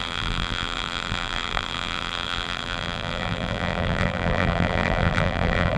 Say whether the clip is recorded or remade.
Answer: remade